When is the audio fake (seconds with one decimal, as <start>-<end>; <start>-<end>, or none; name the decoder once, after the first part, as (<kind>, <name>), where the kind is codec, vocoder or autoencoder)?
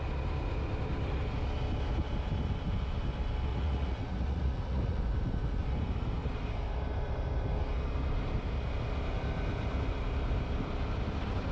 3.5-5.0 (vocoder, Vocos)